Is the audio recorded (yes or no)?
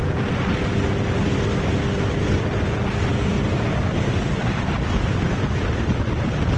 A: yes